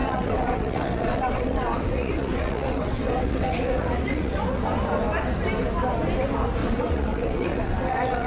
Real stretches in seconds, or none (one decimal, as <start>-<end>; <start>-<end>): 4.6-6.6